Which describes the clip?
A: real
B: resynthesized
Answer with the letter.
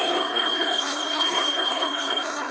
B